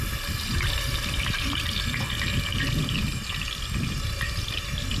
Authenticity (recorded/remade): recorded